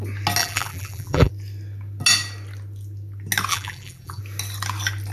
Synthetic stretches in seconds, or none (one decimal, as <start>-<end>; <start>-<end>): 0.4-1.3; 3.5-4.2